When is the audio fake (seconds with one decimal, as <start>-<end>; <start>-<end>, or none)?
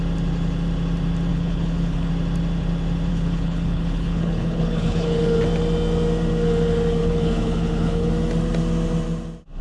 1.3-2.1; 3.1-5.4; 7.0-8.1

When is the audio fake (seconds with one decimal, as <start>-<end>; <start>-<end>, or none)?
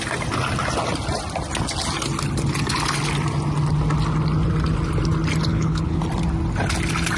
5.5-6.0